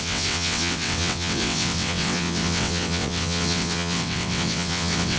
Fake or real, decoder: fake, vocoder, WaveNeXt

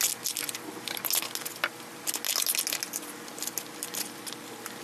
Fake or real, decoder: real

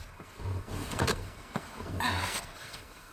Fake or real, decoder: fake, codec, SNAC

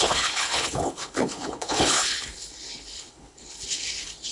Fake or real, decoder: fake, codec, HILCodec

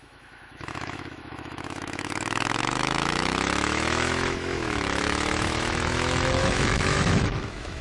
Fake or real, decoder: fake, autoencoder, DAC-VAE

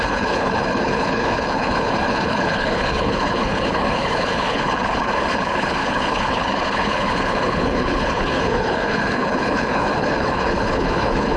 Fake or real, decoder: fake, codec, HILCodec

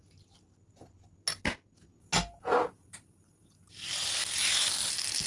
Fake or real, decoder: real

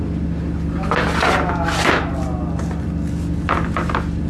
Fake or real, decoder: real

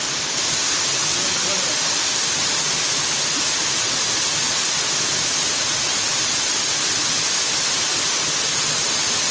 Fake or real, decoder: real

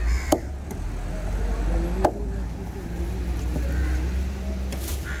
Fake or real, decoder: real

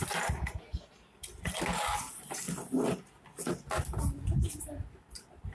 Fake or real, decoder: real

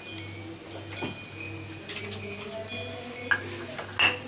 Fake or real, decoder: real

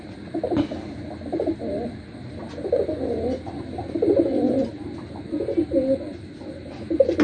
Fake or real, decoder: real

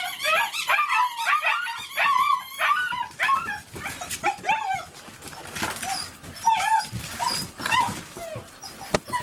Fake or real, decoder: fake, vocoder, BigVGAN v2